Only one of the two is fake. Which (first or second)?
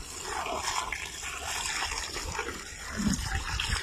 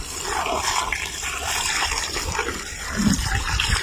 second